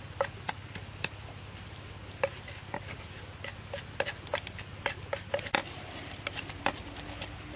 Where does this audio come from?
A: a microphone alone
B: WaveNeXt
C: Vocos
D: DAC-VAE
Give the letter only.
A